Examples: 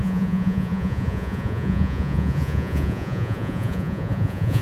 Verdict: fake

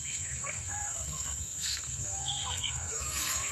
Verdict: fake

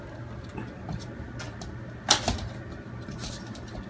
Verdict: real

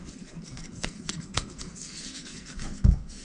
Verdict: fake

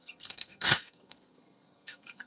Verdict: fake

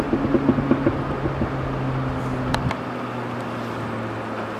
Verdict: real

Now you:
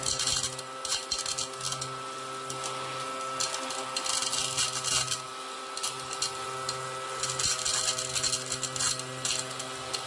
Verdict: real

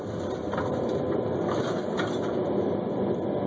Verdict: real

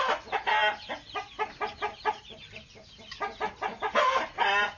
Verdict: real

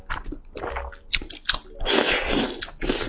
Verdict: real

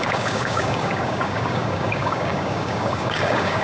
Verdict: fake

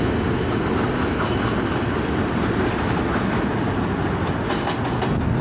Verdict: real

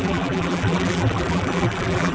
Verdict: fake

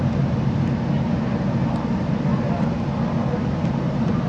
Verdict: fake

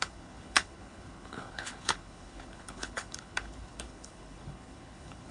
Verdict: fake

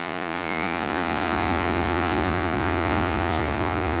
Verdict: fake